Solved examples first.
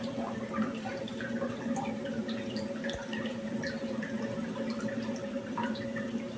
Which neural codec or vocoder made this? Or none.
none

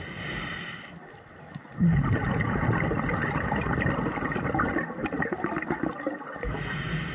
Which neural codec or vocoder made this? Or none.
none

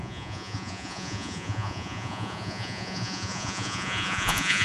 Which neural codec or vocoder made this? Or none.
vocoder, Vocos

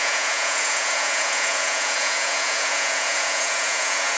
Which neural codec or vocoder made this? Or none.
vocoder, Vocos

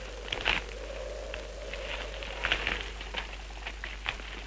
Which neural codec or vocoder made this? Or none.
none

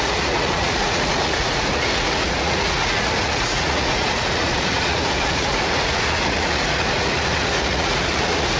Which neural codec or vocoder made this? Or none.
vocoder, Vocos